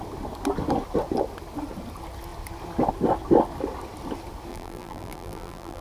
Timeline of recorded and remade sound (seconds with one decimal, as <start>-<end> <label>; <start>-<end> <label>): 0.0-4.5 recorded; 4.5-5.8 remade